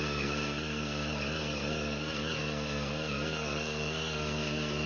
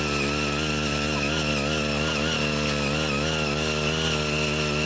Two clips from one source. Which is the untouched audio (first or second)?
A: second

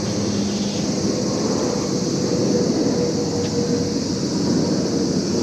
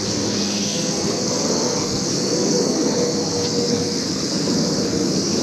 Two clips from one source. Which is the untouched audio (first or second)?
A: first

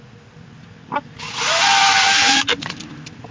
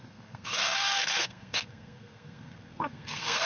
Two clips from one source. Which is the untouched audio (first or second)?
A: first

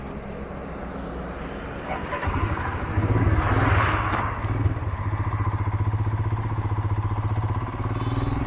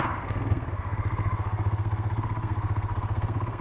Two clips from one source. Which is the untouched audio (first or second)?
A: first